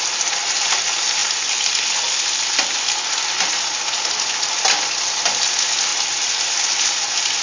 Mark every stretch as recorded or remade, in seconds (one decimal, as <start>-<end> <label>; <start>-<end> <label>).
0.0-7.4 recorded